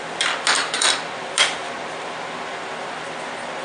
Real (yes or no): yes